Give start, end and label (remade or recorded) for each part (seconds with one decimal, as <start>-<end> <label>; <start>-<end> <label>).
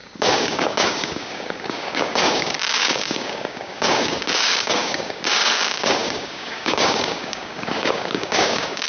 0.0-8.9 remade